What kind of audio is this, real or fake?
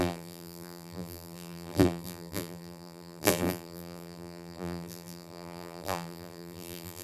fake